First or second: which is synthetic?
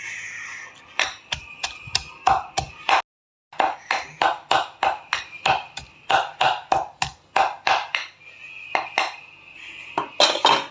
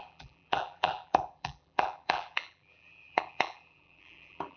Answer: second